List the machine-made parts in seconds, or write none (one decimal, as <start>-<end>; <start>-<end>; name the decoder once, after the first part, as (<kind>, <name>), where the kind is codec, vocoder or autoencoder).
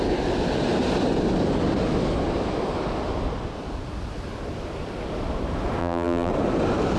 5.8-6.3 (vocoder, BigVGAN v2)